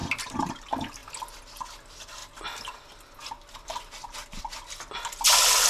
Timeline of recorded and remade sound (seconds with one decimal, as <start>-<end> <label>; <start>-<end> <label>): 0.0-0.6 remade; 0.6-5.7 recorded